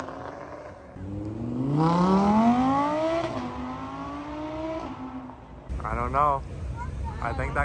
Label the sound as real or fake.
real